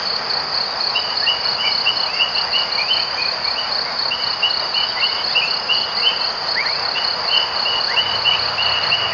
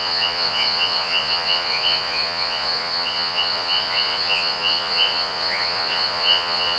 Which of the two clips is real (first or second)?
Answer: first